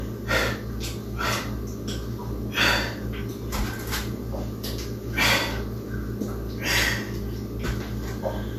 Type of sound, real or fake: real